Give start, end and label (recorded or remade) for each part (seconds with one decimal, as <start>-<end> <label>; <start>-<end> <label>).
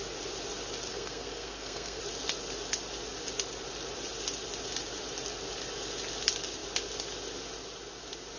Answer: 0.0-0.9 recorded; 0.9-2.0 remade; 2.0-8.4 recorded